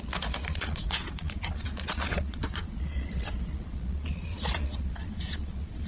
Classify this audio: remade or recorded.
remade